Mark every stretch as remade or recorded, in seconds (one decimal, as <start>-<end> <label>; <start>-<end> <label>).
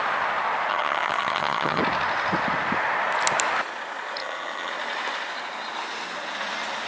0.0-0.7 recorded; 0.7-1.8 remade; 1.8-4.2 recorded; 4.2-4.7 remade; 4.7-6.9 recorded